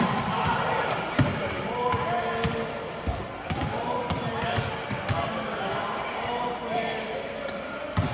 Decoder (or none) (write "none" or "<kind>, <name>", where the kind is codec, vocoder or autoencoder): none